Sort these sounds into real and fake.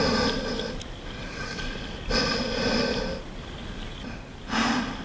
real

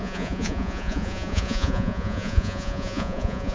fake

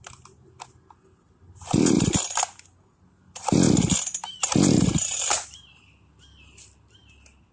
real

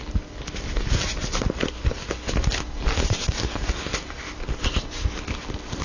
real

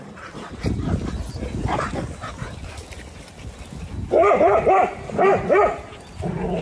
real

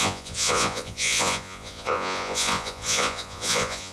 fake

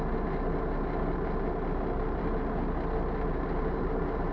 real